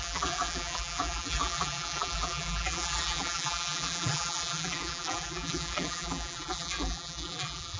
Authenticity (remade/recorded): remade